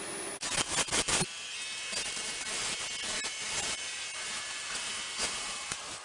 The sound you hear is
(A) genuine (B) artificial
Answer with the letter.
A